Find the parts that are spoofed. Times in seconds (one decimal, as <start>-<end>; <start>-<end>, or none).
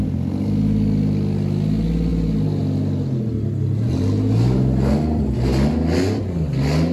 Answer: 2.1-2.6